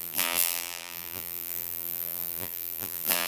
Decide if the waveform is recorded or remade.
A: remade